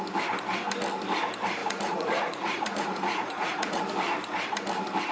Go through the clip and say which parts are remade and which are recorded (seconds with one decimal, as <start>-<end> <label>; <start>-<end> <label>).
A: 0.0-1.6 recorded; 1.6-3.8 remade; 3.8-5.1 recorded